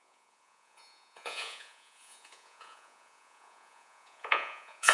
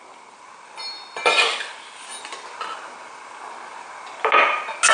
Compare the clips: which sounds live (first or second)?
second